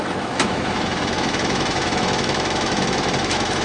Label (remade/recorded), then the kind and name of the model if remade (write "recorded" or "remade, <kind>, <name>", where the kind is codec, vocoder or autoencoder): remade, autoencoder, DAC-VAE